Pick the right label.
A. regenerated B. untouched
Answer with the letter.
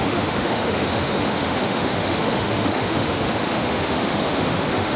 A